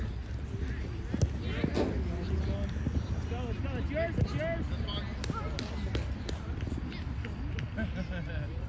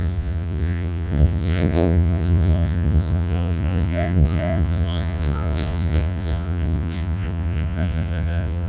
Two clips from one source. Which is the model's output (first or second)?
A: second